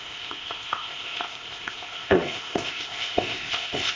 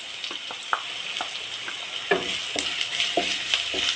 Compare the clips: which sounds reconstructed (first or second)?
first